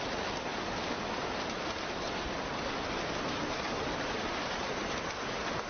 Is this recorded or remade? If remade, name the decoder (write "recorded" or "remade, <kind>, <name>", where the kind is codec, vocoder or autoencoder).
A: recorded